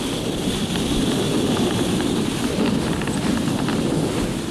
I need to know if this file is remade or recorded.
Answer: recorded